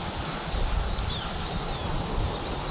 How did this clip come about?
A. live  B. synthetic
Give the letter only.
A